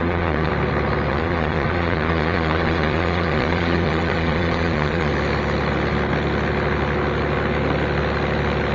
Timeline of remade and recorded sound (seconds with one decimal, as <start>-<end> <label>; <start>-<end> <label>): 0.0-0.5 remade; 0.5-1.1 recorded; 1.1-5.1 remade; 5.1-8.7 recorded